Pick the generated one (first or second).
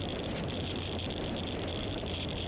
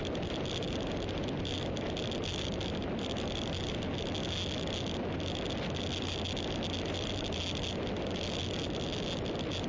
first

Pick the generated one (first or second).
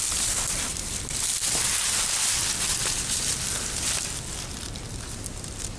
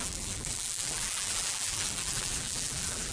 second